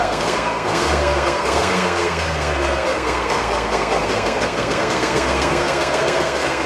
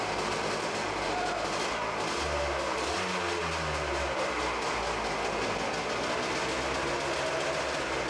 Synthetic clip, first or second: first